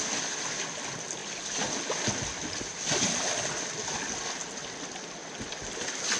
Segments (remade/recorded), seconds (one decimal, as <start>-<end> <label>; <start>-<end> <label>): 0.0-6.2 recorded